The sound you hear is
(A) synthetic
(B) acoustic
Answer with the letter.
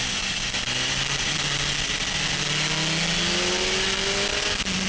B